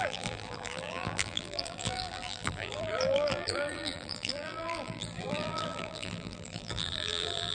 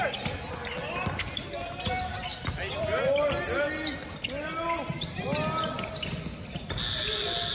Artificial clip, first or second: first